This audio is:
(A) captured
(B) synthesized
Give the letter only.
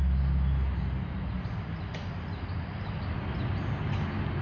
A